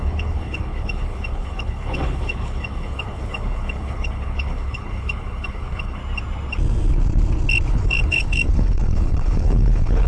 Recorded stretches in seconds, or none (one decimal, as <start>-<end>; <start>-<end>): 6.0-7.7